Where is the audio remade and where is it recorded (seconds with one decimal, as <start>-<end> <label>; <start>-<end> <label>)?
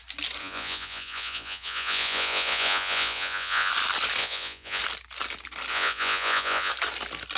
0.0-0.4 recorded; 0.4-3.7 remade; 3.7-4.2 recorded; 4.2-4.8 remade; 4.8-5.7 recorded; 5.7-6.7 remade; 6.7-7.4 recorded